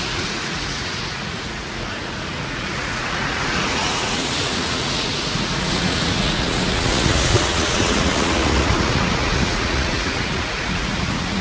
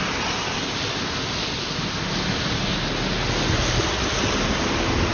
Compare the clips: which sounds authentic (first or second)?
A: second